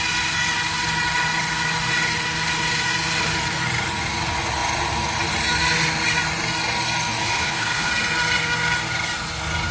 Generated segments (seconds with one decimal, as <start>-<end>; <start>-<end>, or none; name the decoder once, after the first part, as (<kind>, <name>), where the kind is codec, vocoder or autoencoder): 7.2-7.9 (codec, HILCodec)